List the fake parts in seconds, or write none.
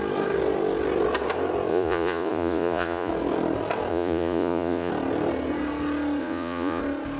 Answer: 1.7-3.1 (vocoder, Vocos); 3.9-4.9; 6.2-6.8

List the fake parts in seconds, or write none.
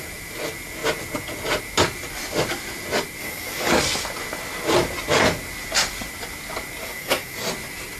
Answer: 3.2-3.7 (codec, DAC); 6.8-7.5